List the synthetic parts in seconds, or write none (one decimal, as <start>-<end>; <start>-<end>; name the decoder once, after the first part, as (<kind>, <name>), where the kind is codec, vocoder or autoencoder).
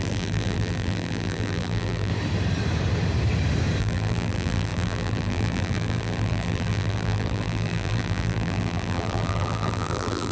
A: 0.0-2.1 (vocoder, BigVGAN v2); 3.8-10.3